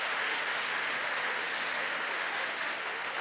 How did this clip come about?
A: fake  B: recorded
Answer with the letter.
A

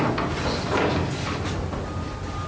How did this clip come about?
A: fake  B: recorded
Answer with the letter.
B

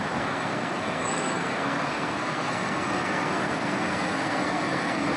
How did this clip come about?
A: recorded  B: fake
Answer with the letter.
B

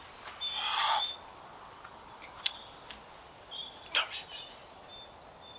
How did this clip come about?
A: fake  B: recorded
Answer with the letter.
B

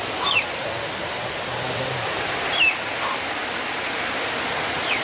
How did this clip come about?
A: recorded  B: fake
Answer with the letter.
A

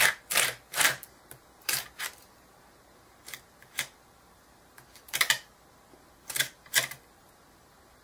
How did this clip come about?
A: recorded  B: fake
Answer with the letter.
B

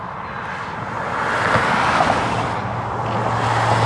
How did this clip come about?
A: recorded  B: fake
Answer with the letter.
A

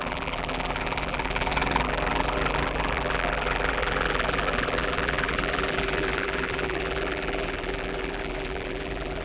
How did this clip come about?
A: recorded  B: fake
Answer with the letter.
B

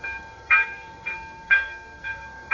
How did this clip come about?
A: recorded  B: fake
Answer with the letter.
B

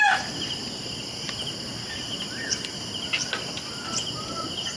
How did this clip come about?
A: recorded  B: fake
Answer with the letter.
A